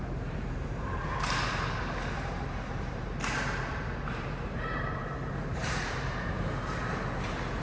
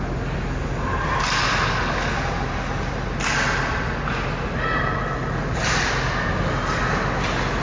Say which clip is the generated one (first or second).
first